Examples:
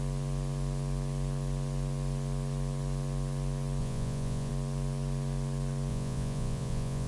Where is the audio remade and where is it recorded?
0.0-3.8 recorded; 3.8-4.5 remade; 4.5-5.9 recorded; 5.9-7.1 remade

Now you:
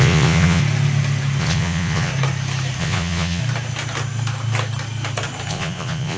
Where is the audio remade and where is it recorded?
0.0-0.6 remade; 0.6-1.4 recorded; 1.4-2.1 remade; 2.1-2.8 recorded; 2.8-3.4 remade; 3.4-5.5 recorded; 5.5-6.2 remade